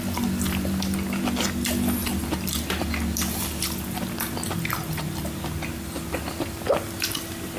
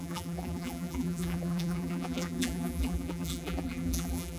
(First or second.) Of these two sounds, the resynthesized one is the second